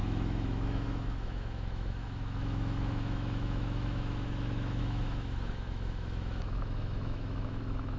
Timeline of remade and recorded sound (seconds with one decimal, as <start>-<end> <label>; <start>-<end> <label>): 0.0-8.0 remade